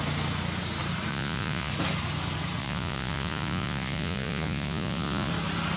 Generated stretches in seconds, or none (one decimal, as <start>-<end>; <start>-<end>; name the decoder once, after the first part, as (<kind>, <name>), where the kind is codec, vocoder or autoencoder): 1.1-1.7 (vocoder, Vocos); 2.6-5.3